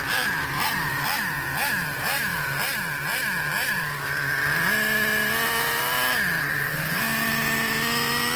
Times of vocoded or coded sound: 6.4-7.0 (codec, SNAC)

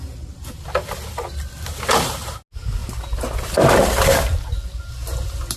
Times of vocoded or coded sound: none

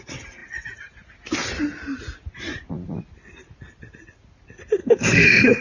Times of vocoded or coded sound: 4.8-5.6 (codec, SNAC)

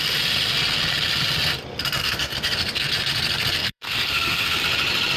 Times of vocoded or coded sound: 2.0-2.9 (codec, SNAC); 3.6-4.6

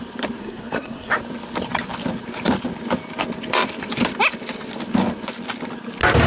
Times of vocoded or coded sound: 0.4-1.1 (codec, SNAC)

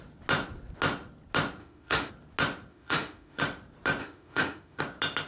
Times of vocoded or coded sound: 1.6-2.1 (autoencoder, DAC-VAE); 2.7-3.4; 4.0-4.8

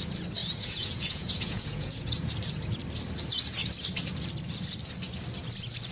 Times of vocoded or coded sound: 0.4-2.1 (vocoder, Vocos)